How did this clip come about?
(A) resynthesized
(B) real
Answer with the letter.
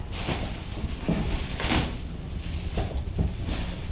B